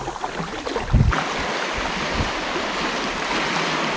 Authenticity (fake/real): real